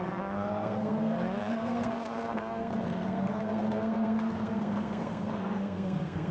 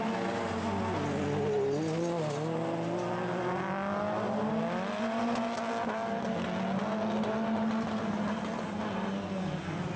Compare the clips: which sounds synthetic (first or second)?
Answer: first